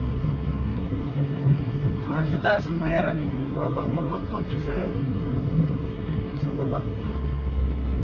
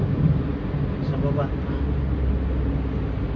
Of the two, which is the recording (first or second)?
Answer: second